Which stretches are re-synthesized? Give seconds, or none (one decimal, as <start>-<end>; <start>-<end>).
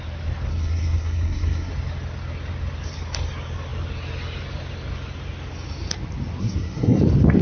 0.5-1.7; 6.4-7.0